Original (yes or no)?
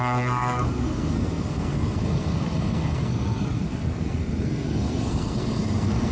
no